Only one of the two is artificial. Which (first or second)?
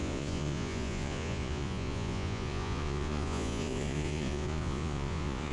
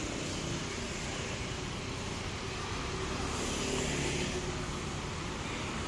first